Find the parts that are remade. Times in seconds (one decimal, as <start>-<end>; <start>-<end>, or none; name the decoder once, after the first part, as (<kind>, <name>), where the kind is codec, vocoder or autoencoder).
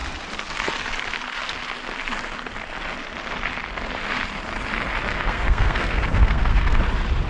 5.1-6.8 (codec, SNAC)